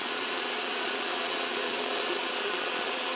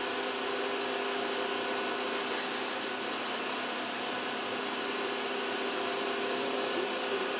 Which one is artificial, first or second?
first